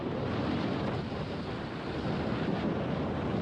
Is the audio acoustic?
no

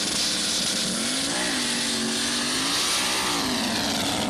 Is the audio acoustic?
yes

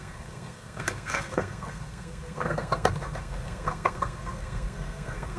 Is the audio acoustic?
no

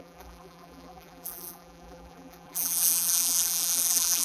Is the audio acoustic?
no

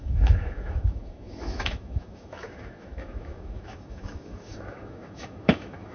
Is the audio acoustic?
no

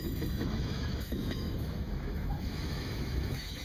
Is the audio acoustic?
no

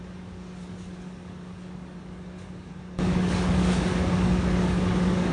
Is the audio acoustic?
no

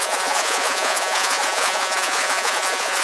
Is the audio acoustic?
no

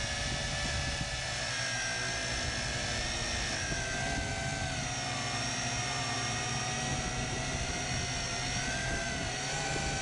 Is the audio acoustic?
yes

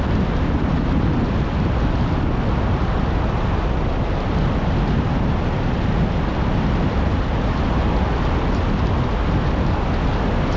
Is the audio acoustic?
yes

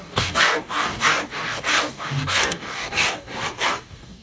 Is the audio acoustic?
no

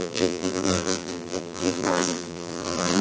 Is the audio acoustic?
no